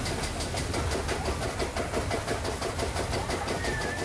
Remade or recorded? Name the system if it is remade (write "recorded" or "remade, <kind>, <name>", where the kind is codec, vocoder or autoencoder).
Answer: recorded